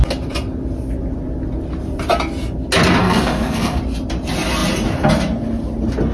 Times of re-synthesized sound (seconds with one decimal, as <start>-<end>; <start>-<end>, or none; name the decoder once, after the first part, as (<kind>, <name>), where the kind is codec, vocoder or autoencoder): 3.0-3.8 (codec, SNAC)

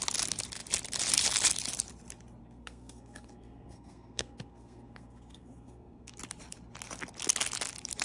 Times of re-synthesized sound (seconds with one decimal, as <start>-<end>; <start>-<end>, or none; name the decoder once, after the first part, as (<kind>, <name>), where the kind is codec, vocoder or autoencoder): 2.4-6.2 (codec, SNAC)

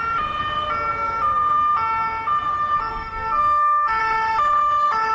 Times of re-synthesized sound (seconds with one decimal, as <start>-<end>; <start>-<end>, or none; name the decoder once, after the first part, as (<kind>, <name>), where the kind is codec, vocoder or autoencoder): 2.9-4.0 (codec, SNAC)

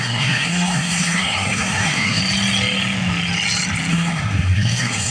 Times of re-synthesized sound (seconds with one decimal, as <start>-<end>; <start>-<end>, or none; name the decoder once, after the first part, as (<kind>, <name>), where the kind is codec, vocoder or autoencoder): 0.0-2.2 (codec, SNAC); 3.9-5.1

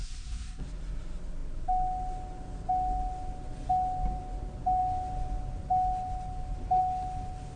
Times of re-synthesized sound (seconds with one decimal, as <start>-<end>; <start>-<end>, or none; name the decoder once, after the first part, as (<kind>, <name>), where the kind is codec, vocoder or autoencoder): 0.0-0.6 (codec, SNAC)

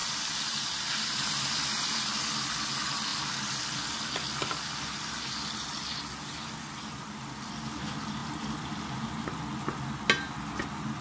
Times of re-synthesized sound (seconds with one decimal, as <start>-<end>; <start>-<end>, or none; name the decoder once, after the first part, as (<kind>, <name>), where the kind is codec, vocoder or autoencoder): none